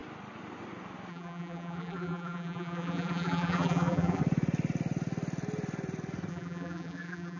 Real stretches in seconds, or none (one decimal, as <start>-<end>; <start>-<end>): 0.0-1.1; 4.2-6.3